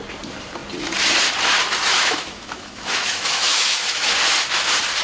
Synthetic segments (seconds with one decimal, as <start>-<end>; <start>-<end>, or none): 1.9-4.1